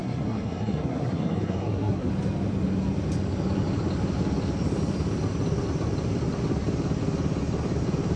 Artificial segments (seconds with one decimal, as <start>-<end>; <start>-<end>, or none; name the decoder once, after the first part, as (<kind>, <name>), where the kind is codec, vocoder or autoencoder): 0.0-2.1 (codec, SNAC)